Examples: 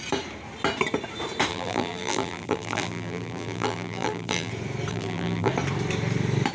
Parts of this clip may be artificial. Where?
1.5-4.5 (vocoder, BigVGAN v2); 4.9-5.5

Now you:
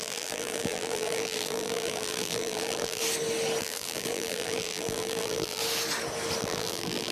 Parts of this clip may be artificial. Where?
0.0-3.0 (vocoder, BigVGAN v2); 3.6-5.6; 6.4-7.1

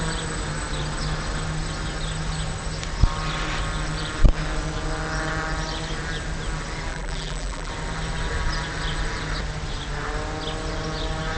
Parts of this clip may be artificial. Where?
6.9-7.7 (vocoder, BigVGAN v2)

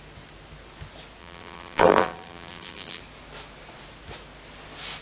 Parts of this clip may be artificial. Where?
1.2-3.0 (vocoder, BigVGAN v2)

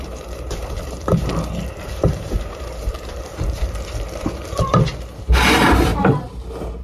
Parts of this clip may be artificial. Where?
0.0-6.8 (vocoder, BigVGAN v2)

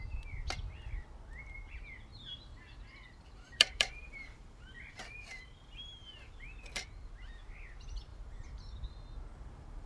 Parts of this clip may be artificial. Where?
2.1-7.1 (vocoder, BigVGAN v2); 8.1-8.9; 9.3-9.9

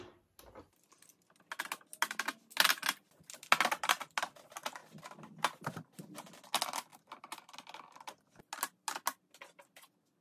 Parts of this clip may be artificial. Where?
none